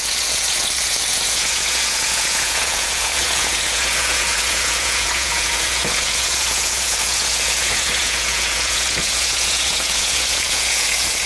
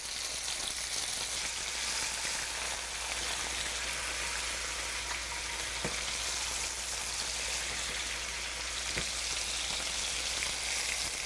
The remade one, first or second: first